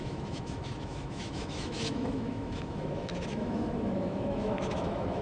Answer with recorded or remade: remade